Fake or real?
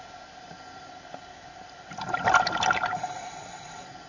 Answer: real